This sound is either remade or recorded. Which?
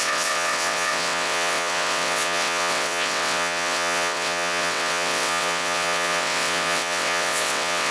remade